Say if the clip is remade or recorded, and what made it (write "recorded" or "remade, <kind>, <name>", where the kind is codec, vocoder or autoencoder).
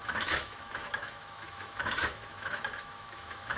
remade, autoencoder, DAC-VAE